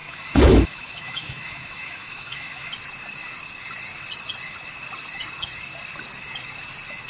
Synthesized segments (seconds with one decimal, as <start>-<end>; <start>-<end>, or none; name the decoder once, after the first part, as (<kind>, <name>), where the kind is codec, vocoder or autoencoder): 0.0-2.7 (autoencoder, DAC-VAE)